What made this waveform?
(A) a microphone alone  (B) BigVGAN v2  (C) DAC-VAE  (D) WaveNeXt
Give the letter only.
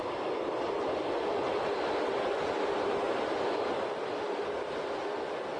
A